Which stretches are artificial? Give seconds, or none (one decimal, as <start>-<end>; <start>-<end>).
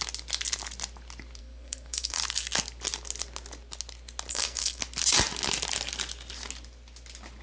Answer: 1.4-2.2; 4.3-4.8